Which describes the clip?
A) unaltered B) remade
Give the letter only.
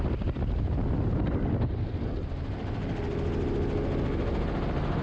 A